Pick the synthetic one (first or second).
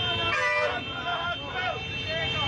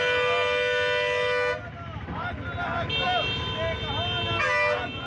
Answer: first